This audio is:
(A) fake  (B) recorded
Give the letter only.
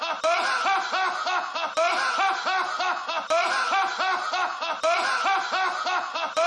B